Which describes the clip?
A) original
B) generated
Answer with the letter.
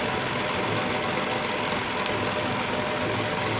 A